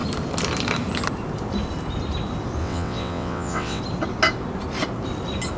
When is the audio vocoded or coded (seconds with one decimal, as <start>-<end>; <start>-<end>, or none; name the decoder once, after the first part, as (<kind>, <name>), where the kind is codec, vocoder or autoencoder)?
2.6-3.8 (vocoder, WaveNeXt)